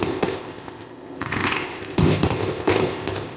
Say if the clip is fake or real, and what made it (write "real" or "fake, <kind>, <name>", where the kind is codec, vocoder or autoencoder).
fake, codec, ZipCodec